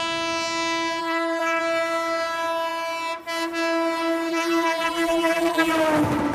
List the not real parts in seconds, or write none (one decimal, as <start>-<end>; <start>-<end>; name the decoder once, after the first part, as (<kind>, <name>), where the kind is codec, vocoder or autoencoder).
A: 1.0-1.6 (vocoder, BigVGAN v2); 4.3-5.7